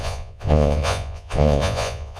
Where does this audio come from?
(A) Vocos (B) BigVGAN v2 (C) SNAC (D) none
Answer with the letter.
A